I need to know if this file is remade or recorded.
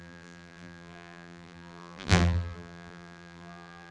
remade